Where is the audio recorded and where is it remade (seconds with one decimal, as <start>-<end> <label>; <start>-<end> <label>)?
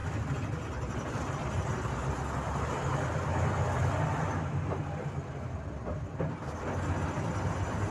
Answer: 0.0-7.9 recorded